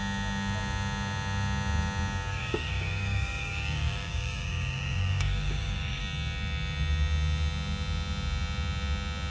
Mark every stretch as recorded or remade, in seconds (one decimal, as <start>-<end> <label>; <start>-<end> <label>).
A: 0.0-2.3 recorded; 2.3-6.0 remade; 6.0-9.3 recorded